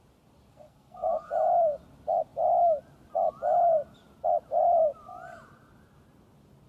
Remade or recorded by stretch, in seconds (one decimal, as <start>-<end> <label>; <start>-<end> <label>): 0.0-0.5 recorded; 0.5-1.3 remade; 1.3-6.7 recorded